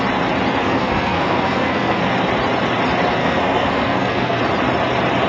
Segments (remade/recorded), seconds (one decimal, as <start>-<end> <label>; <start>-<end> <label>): 0.0-0.6 recorded; 0.6-2.1 remade; 2.1-3.2 recorded; 3.2-4.4 remade; 4.4-5.3 recorded